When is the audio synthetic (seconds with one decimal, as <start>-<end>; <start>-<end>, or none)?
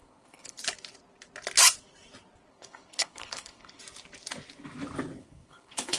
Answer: 0.0-0.6; 2.5-3.8; 5.2-6.0